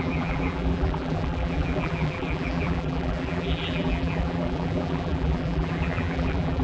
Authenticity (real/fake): fake